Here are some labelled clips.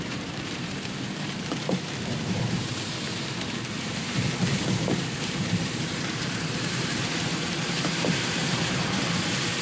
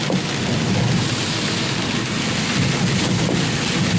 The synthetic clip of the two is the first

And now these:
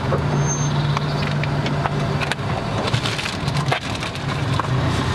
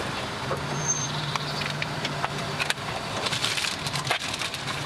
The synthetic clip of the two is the second